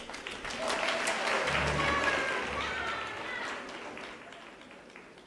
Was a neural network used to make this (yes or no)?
no